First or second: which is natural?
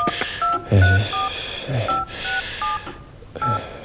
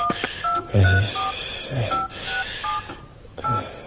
first